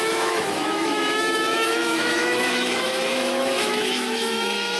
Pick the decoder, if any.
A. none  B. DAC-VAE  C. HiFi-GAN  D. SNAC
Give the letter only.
B